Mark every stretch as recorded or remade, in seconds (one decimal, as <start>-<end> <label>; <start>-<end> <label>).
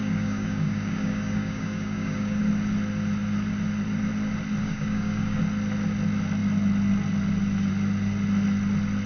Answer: 0.0-2.4 remade; 2.4-4.6 recorded; 4.6-5.4 remade; 5.4-9.1 recorded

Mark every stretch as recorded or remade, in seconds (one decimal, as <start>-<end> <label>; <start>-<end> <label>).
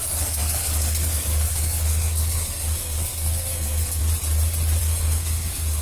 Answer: 0.0-4.0 remade; 4.0-4.8 recorded; 4.8-5.8 remade